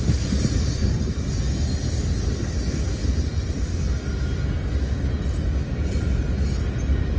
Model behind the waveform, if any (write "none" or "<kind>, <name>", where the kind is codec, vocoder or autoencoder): none